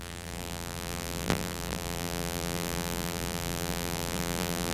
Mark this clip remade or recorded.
remade